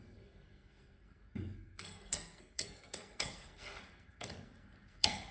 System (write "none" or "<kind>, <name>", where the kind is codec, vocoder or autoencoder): codec, SNAC